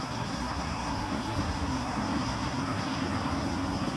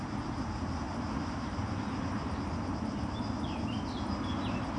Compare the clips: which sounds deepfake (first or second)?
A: first